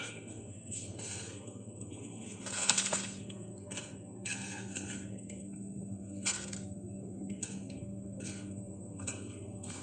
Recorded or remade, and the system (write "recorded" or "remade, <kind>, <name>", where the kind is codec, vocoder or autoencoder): remade, codec, SNAC